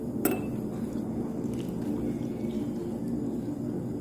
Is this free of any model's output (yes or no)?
yes